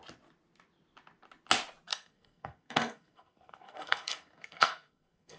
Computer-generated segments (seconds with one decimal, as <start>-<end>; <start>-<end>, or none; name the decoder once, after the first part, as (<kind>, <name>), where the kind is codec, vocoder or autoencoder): 1.9-5.4 (codec, SNAC)